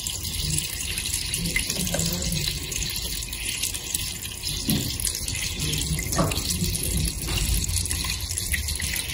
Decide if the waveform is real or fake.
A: real